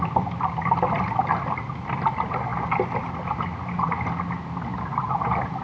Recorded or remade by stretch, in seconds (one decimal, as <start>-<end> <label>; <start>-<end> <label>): 0.0-5.6 recorded